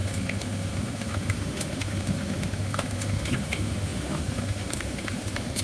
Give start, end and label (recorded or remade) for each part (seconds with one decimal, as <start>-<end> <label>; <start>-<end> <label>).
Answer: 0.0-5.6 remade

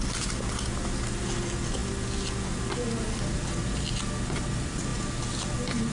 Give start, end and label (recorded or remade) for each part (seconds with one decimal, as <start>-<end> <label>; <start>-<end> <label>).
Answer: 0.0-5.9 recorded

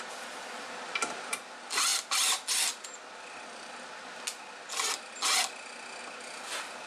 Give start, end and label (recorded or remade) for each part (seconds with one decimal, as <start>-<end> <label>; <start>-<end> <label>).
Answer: 0.0-6.9 recorded

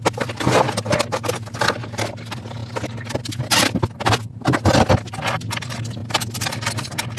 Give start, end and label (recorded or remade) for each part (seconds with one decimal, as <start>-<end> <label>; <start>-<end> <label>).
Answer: 0.0-7.2 recorded

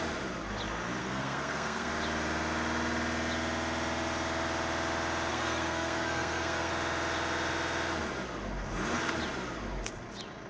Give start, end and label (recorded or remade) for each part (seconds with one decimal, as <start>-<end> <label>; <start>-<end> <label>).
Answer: 0.0-1.0 recorded; 1.0-1.9 remade; 1.9-5.3 recorded; 5.3-6.7 remade; 6.7-10.5 recorded